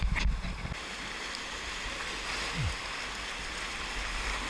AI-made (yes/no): no